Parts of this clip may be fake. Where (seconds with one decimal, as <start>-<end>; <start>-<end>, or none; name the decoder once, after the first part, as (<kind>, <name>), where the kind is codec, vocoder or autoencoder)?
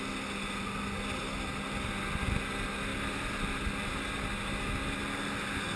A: none